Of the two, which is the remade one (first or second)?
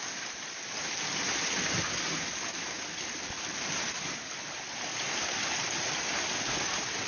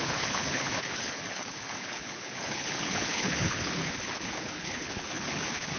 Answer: second